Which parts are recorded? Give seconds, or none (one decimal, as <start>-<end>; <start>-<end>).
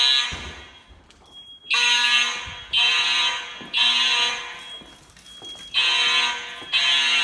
0.0-7.2